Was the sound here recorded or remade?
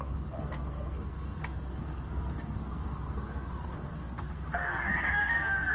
remade